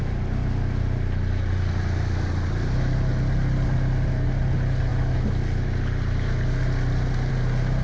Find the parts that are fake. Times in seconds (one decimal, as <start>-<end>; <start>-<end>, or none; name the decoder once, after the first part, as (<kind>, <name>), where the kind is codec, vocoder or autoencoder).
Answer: none